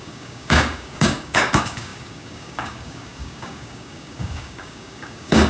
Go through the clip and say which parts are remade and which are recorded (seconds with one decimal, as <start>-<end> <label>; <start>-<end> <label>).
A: 0.0-5.5 remade